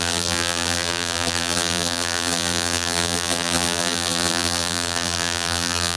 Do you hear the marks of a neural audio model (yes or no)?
yes